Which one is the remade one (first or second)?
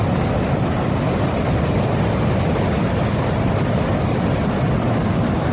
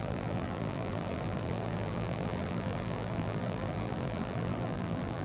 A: second